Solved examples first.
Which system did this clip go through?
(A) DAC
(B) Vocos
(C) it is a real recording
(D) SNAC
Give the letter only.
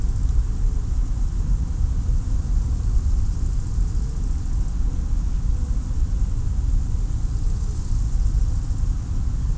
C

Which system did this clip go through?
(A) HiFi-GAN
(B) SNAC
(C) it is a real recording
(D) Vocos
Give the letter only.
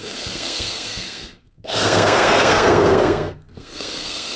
B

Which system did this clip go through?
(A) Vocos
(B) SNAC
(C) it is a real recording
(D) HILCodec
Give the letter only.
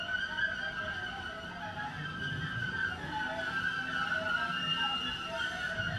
C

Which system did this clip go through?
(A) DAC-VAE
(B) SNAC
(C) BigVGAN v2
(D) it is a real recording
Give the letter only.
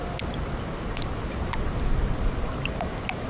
D